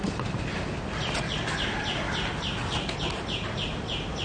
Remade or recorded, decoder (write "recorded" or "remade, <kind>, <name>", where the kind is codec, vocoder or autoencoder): recorded